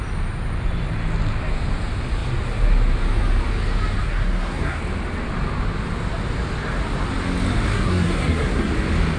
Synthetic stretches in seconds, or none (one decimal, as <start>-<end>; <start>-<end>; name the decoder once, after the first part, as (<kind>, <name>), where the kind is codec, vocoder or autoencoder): 4.0-4.8 (codec, SNAC); 7.7-8.7